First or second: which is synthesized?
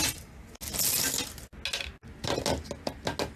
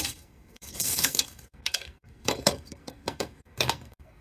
second